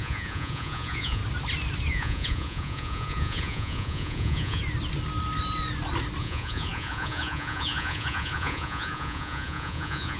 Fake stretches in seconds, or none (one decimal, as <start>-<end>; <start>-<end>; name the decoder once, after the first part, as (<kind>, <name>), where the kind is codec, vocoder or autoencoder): 0.0-1.2 (vocoder, Vocos); 1.9-4.6; 6.2-10.2